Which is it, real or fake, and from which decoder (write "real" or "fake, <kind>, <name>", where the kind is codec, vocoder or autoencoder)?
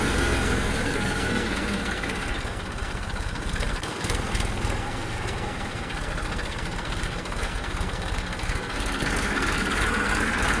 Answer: fake, codec, SNAC